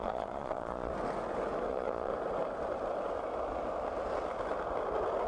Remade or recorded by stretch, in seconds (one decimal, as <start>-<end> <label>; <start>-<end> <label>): 0.0-0.9 remade; 0.9-1.7 recorded; 1.7-2.1 remade; 2.1-5.3 recorded